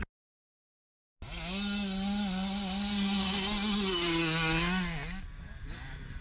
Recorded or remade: recorded